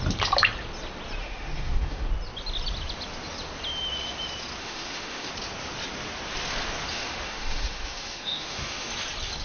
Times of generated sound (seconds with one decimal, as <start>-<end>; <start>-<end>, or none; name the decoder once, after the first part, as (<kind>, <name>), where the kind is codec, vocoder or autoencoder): 1.2-2.1 (autoencoder, DAC-VAE); 4.6-5.3; 6.9-8.9